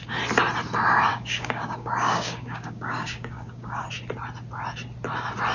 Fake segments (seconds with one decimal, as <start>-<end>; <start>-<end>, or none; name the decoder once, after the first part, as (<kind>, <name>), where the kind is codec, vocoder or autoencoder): 1.1-3.8 (codec, DAC)